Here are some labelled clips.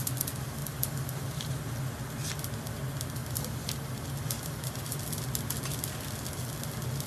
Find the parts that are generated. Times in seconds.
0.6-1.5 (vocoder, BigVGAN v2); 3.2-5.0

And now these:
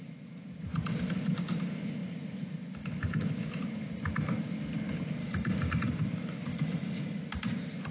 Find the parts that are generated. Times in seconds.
5.2-5.9 (autoencoder, DAC-VAE); 6.5-7.2

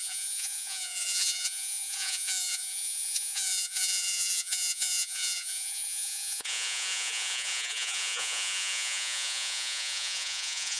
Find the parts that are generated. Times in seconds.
0.0-10.8 (vocoder, Vocos)

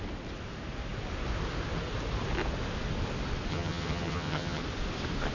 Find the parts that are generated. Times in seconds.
3.5-4.6 (vocoder, HiFi-GAN)

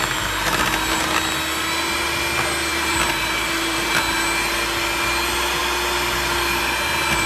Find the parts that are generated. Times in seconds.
2.7-3.9 (vocoder, BigVGAN v2)